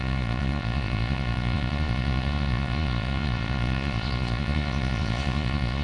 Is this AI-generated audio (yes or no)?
yes